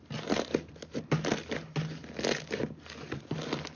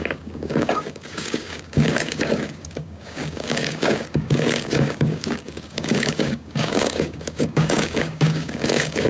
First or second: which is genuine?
first